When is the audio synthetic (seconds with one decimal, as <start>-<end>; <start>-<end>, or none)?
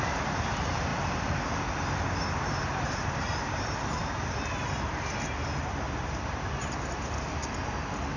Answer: 0.0-4.0; 4.6-7.4